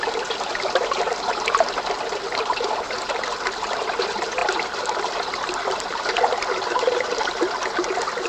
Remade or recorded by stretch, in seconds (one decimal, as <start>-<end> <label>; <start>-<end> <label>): 0.0-4.4 recorded; 4.4-7.3 remade; 7.3-8.3 recorded